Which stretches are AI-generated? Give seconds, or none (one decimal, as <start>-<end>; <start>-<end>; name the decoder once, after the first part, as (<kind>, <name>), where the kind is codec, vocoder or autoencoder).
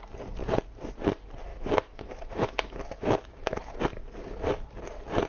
1.5-3.8 (autoencoder, DAC-VAE)